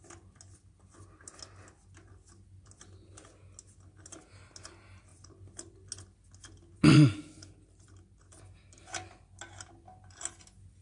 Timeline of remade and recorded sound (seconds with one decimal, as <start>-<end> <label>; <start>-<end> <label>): 0.0-10.8 recorded